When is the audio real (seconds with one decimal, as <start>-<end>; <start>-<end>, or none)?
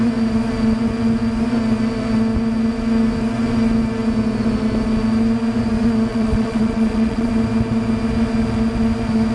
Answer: 0.0-6.1; 7.3-9.3